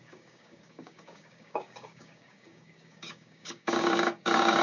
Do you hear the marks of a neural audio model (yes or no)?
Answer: yes